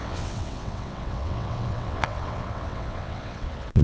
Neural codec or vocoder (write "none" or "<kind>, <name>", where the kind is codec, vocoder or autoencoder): vocoder, WaveNeXt